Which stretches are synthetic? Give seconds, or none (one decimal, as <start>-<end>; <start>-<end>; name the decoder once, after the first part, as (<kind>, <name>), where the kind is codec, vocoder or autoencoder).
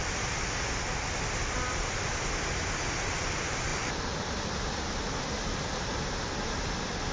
none